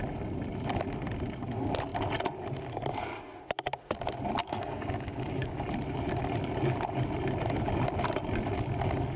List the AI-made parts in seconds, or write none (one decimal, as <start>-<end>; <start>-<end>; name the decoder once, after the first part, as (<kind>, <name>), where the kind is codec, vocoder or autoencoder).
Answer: 4.4-5.6 (codec, DAC)